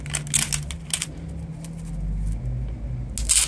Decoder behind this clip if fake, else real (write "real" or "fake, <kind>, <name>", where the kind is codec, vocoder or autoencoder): real